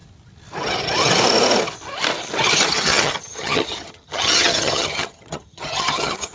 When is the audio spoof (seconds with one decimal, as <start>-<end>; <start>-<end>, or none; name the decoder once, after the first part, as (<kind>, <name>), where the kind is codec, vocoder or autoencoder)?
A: 2.7-6.3 (vocoder, HiFi-GAN)